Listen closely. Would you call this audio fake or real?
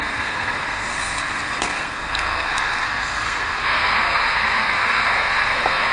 fake